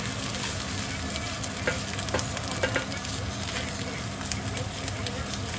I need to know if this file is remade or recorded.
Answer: recorded